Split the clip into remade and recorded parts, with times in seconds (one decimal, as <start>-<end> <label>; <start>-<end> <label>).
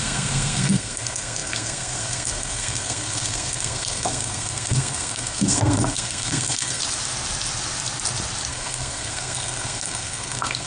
0.0-6.8 remade; 6.8-8.5 recorded; 8.5-10.7 remade